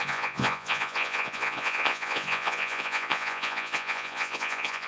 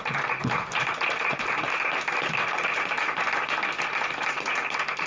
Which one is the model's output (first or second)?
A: first